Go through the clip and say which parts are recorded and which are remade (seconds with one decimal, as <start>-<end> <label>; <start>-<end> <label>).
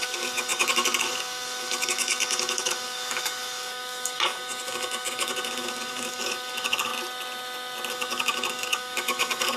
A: 0.0-6.9 remade; 6.9-7.9 recorded; 7.9-9.6 remade